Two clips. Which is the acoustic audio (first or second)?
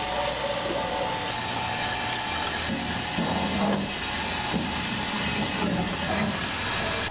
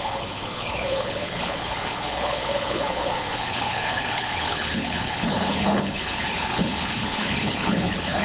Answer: first